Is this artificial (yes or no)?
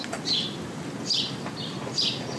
no